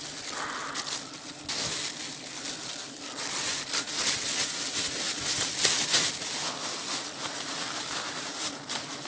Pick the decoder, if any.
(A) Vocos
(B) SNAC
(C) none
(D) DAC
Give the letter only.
C